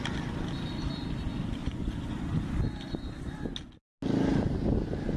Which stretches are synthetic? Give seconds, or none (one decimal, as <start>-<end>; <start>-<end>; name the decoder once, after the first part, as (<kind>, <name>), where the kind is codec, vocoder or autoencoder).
1.6-2.2 (vocoder, Vocos)